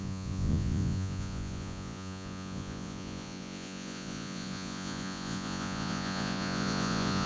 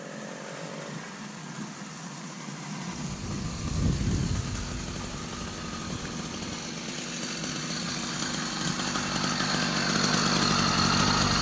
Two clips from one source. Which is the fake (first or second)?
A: first